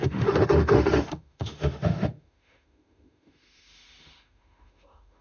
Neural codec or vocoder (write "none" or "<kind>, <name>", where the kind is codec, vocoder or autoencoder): autoencoder, DAC-VAE